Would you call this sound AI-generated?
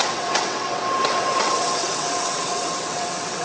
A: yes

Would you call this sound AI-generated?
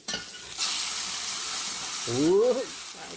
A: no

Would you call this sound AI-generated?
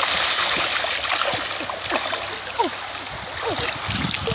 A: no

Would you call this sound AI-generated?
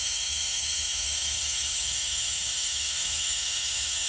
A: yes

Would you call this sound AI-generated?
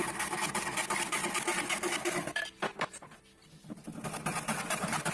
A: no